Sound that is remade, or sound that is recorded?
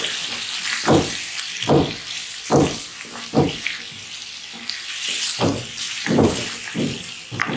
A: recorded